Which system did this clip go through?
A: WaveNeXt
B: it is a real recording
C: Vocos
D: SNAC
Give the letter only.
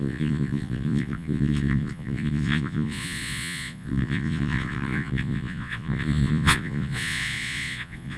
C